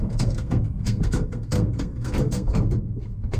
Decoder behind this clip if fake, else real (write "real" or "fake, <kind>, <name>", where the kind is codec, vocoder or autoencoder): fake, codec, SNAC